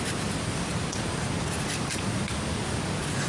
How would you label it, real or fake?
fake